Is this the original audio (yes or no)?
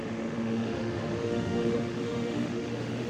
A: no